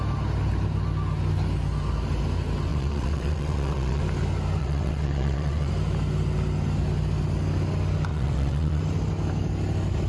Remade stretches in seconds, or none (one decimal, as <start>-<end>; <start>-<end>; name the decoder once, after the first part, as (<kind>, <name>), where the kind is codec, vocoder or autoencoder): 2.7-4.0 (vocoder, WaveNeXt); 4.6-5.7; 8.1-8.8